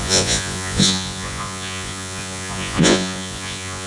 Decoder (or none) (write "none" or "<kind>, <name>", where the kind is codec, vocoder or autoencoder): vocoder, Vocos